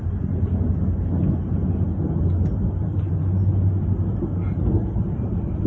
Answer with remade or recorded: recorded